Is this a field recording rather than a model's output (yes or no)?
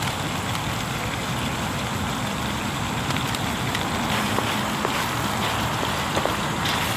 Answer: no